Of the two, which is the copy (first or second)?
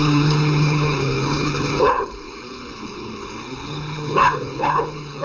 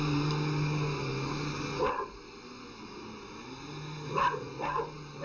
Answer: first